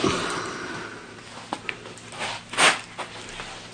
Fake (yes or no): no